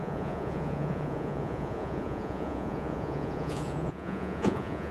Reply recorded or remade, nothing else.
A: remade